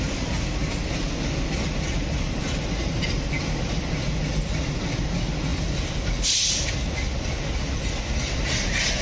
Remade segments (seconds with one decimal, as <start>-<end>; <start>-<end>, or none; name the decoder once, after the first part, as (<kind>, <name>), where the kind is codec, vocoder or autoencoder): none